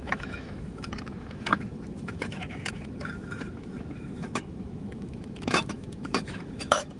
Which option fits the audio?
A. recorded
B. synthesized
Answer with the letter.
B